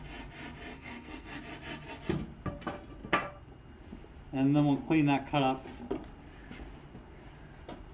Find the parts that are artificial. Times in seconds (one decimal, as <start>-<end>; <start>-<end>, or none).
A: 0.7-1.4